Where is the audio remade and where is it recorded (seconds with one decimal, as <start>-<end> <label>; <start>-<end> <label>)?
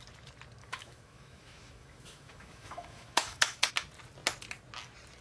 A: 0.0-0.6 recorded; 0.6-3.7 remade; 3.7-5.2 recorded